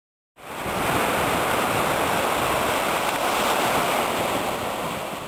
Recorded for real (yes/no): yes